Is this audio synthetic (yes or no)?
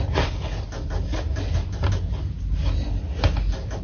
no